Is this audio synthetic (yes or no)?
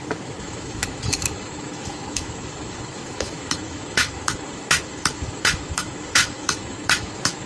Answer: yes